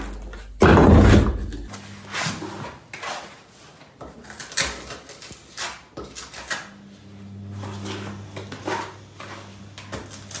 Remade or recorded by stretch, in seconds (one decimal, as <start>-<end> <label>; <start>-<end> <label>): 0.0-10.4 recorded